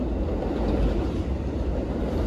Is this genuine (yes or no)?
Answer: yes